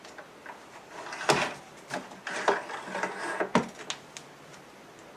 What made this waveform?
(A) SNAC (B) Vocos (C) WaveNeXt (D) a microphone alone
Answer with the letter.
D